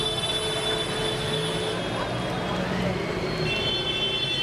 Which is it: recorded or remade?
recorded